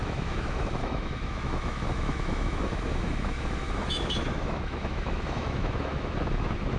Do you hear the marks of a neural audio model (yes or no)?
yes